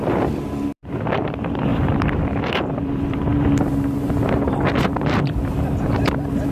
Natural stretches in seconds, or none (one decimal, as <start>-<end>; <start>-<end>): none